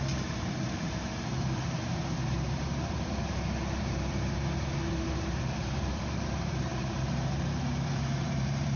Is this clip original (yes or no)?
no